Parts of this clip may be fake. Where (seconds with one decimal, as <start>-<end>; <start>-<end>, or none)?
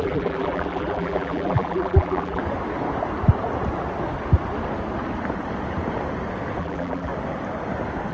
0.0-2.4; 6.6-7.1